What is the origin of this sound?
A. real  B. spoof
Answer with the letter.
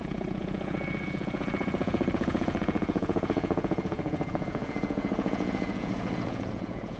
B